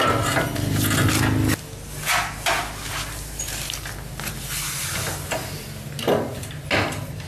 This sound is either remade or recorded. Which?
recorded